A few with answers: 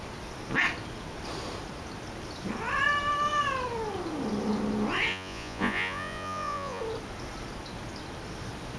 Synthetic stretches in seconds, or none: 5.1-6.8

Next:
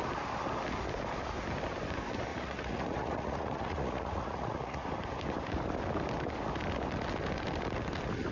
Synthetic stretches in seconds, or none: 2.3-4.8

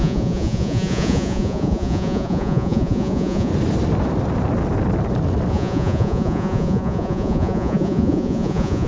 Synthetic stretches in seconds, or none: 0.0-3.5; 5.5-8.9

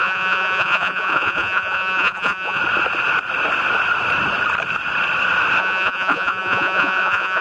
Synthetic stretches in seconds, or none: 0.0-2.6; 5.6-7.4

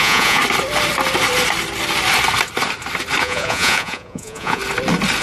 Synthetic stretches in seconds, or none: 0.0-0.4; 3.2-4.6